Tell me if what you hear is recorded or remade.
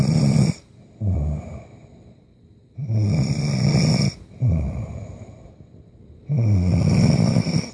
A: recorded